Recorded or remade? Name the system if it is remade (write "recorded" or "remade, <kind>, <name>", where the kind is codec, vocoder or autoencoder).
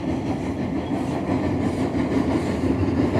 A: recorded